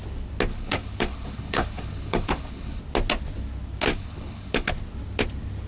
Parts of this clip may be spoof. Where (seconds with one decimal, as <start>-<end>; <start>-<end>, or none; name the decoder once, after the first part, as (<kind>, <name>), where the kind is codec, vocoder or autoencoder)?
0.5-2.8 (codec, HILCodec); 3.9-4.7